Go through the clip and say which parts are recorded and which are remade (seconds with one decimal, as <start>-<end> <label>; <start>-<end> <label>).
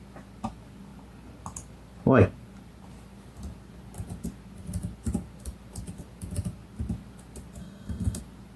0.0-7.6 recorded; 7.6-8.2 remade; 8.2-8.6 recorded